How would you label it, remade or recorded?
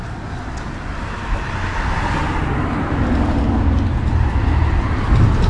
recorded